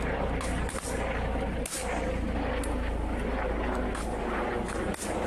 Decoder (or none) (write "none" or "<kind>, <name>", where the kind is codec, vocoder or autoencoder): none